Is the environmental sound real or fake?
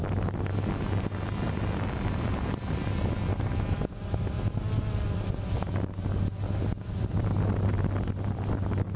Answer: real